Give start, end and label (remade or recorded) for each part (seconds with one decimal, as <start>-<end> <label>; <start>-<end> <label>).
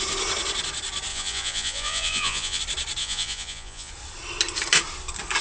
0.0-1.1 recorded; 1.1-2.6 remade; 2.6-3.0 recorded; 3.0-3.9 remade; 3.9-5.4 recorded